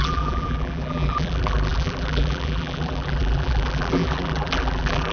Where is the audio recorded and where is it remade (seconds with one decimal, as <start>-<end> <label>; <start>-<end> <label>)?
0.0-5.1 remade